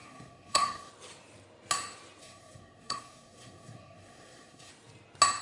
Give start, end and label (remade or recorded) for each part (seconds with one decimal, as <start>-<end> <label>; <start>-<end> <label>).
0.0-0.9 remade; 0.9-2.2 recorded; 2.2-4.7 remade; 4.7-5.4 recorded